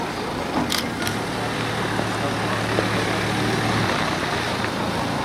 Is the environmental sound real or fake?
real